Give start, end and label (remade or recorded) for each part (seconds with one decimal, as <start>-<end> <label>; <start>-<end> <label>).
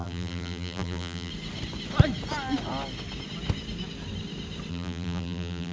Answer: 0.0-1.3 remade; 1.3-4.7 recorded; 4.7-5.7 remade